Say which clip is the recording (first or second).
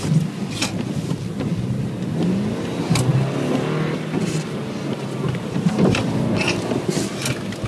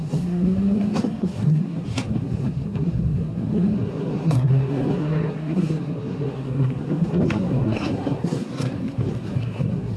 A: first